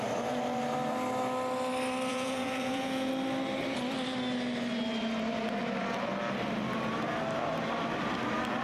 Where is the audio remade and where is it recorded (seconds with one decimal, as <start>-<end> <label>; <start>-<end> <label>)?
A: 0.0-2.1 recorded; 2.1-3.1 remade; 3.1-8.6 recorded